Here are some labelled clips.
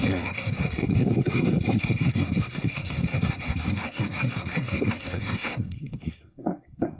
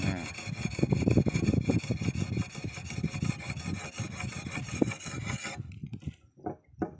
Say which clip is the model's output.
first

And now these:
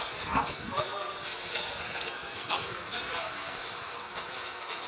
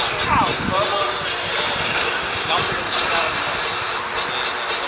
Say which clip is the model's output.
first